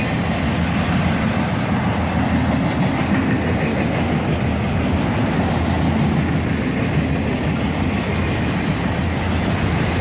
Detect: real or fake real